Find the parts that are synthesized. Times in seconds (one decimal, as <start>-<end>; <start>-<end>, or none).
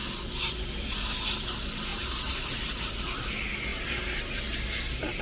1.9-2.9; 3.7-4.4